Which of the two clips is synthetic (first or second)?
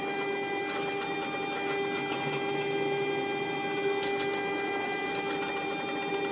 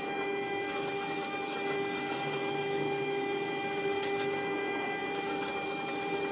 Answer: second